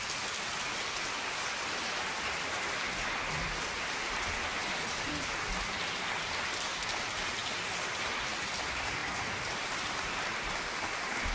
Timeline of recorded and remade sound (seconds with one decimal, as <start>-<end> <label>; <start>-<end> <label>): 0.0-11.3 recorded